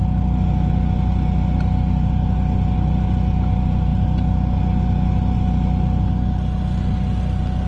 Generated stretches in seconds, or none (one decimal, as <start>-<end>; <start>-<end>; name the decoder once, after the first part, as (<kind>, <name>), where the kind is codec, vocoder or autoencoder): none

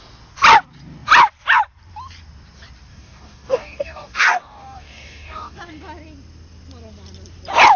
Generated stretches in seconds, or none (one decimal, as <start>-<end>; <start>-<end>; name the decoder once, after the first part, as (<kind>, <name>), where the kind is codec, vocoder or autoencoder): 2.9-5.6 (codec, DAC)

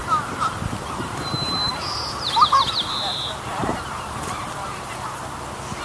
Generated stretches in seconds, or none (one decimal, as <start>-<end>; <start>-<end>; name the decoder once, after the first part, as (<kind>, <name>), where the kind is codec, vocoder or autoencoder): 0.0-2.8 (vocoder, BigVGAN v2); 3.6-4.7

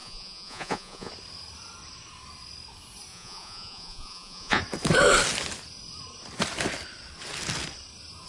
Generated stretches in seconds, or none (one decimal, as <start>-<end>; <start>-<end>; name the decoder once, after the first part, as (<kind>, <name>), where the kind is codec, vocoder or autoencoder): 0.0-1.1 (vocoder, Vocos); 3.1-4.6